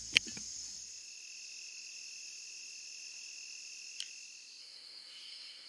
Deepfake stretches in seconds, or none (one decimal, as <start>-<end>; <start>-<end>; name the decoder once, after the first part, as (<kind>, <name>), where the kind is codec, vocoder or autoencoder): 4.6-5.7 (codec, SNAC)